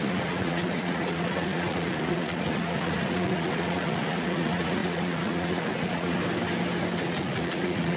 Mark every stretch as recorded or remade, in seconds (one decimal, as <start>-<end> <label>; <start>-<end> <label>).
0.0-6.2 remade; 6.2-7.0 recorded; 7.0-8.0 remade